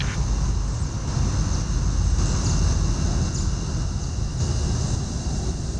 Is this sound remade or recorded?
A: recorded